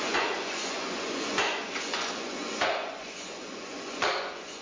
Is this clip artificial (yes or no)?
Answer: yes